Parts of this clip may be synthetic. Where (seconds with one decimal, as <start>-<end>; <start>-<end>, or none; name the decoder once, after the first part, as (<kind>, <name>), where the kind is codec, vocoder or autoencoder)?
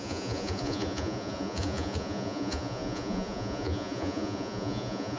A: 0.0-5.2 (vocoder, Vocos)